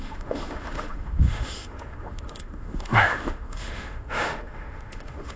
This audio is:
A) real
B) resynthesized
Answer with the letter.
B